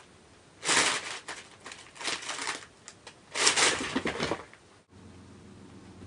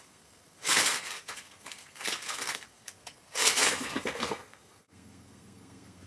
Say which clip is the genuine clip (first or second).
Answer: first